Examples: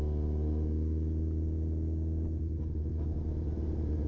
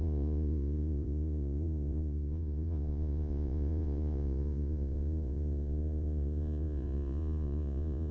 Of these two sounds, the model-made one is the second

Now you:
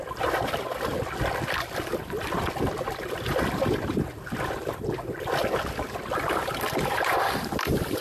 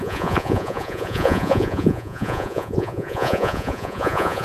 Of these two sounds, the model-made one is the second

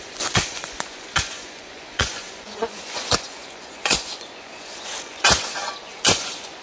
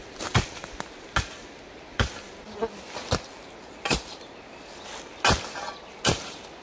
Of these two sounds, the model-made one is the first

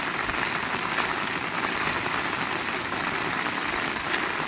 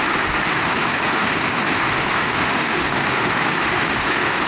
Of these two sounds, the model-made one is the second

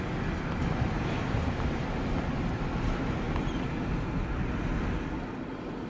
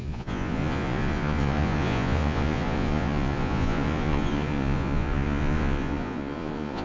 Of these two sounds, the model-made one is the second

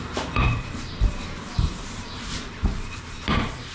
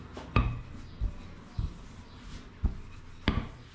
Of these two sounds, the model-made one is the first